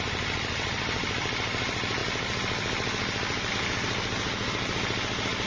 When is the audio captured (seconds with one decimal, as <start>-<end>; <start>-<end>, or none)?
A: 0.0-5.5